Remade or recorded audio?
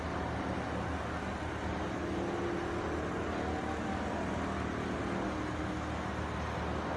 recorded